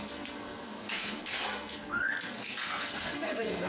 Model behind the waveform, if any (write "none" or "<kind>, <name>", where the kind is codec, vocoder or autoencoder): codec, SNAC